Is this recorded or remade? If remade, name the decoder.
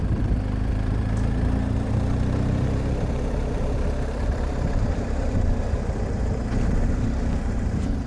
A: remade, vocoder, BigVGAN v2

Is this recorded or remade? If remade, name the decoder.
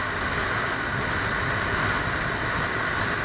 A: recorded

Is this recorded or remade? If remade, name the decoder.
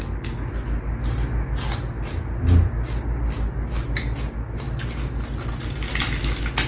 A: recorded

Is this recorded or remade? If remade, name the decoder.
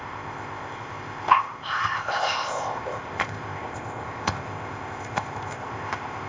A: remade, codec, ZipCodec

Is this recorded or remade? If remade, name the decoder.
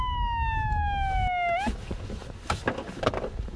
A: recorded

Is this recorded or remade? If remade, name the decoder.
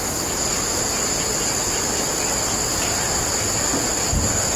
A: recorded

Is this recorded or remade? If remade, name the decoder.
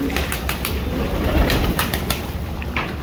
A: remade, vocoder, BigVGAN v2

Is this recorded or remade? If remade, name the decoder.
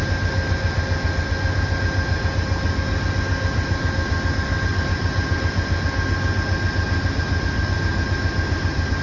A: recorded